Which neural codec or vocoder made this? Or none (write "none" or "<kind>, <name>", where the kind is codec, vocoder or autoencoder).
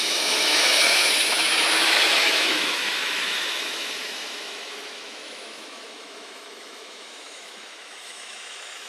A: autoencoder, DAC-VAE